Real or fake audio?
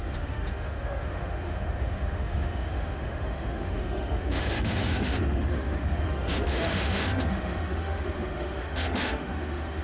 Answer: fake